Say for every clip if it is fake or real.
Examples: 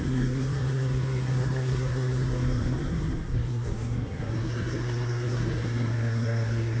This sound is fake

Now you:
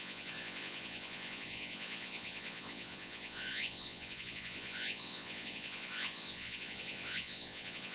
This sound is fake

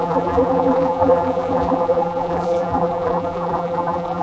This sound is fake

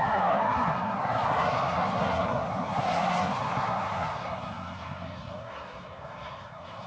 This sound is fake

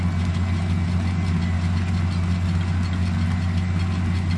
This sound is real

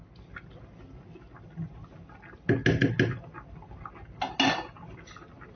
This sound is real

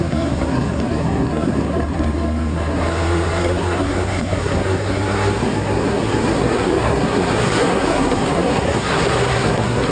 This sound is fake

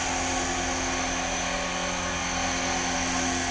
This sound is real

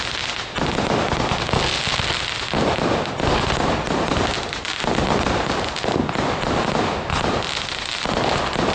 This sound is real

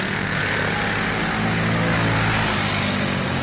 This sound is real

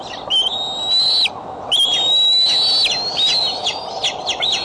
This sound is real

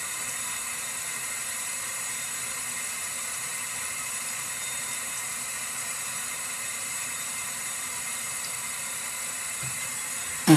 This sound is fake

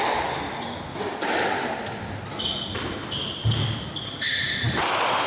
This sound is real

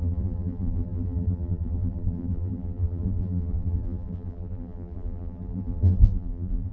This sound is fake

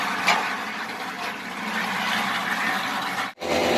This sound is real